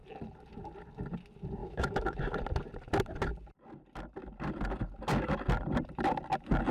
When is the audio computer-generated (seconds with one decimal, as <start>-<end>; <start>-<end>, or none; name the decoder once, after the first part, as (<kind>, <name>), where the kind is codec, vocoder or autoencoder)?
1.6-2.2 (autoencoder, DAC-VAE)